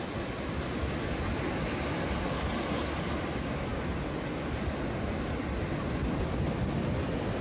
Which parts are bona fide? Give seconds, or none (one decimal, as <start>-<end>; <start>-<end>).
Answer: 0.0-7.4